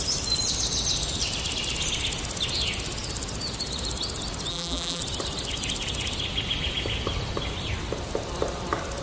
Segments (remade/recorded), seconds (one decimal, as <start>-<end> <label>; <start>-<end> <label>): 0.0-4.5 recorded; 4.5-5.0 remade; 5.0-9.0 recorded